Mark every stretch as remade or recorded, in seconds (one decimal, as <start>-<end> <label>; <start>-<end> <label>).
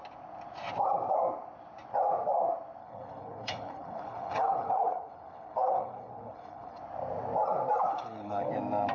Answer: 0.0-2.8 recorded; 2.8-6.8 remade; 6.8-7.9 recorded; 7.9-8.5 remade; 8.5-8.9 recorded